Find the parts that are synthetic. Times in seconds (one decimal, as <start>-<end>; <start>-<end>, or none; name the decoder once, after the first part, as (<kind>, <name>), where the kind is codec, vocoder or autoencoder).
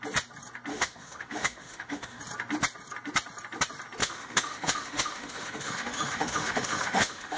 0.7-2.2 (autoencoder, DAC-VAE); 4.0-7.4